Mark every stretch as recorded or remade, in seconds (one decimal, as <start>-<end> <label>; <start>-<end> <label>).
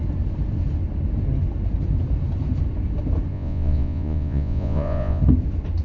0.0-3.3 recorded; 3.3-5.2 remade; 5.2-5.8 recorded